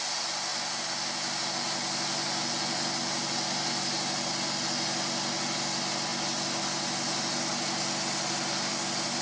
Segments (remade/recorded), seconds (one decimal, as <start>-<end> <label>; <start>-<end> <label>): 0.0-9.2 recorded